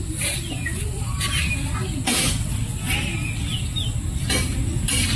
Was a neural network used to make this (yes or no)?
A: no